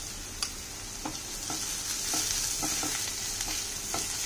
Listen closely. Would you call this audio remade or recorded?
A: recorded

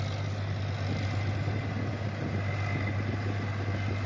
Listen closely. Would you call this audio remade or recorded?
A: recorded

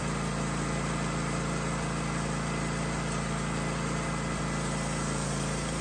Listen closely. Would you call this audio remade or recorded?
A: recorded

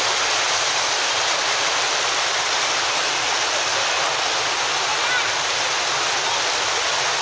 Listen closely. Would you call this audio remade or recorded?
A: recorded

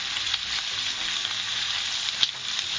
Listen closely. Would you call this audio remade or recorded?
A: recorded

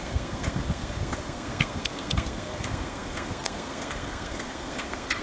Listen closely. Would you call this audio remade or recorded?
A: remade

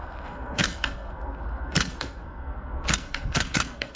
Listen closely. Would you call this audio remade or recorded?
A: remade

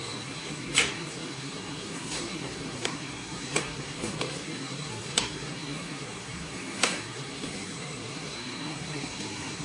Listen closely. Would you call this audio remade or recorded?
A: remade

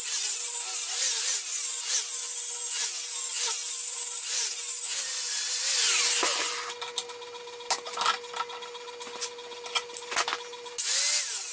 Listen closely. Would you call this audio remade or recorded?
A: recorded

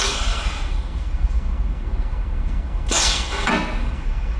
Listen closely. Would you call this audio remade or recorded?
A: remade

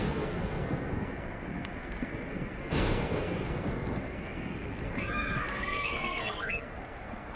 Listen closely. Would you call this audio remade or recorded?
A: remade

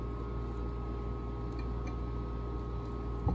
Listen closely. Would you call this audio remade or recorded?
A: recorded